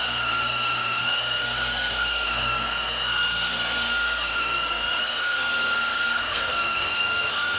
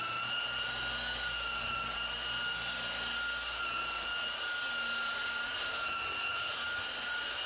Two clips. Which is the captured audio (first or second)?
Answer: second